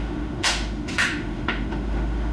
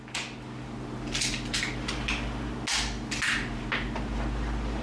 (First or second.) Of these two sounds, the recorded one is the second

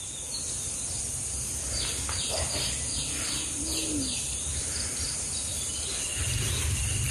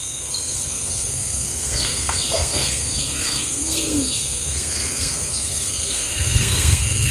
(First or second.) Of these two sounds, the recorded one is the first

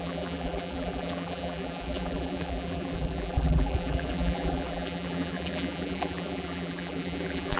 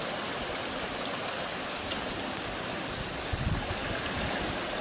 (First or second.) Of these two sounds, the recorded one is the second